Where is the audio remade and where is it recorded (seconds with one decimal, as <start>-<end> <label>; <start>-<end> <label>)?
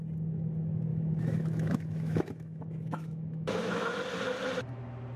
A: 0.0-0.9 recorded; 0.9-4.0 remade; 4.0-5.2 recorded